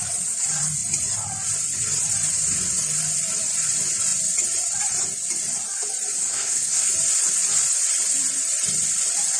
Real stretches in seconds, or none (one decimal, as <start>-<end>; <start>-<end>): 0.0-6.2; 6.9-9.4